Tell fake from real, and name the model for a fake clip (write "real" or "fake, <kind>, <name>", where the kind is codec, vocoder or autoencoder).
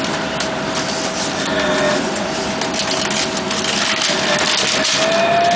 real